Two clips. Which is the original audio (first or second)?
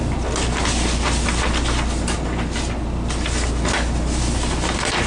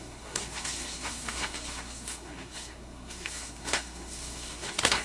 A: first